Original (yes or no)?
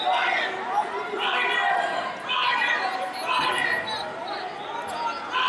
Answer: yes